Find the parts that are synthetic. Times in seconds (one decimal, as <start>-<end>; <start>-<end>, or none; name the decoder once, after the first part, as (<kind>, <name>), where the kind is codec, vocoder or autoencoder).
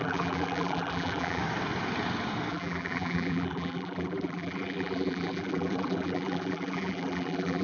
0.0-1.4 (vocoder, BigVGAN v2); 2.5-7.6